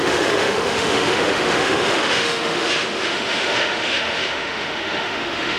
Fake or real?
fake